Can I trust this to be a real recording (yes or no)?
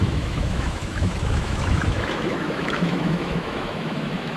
no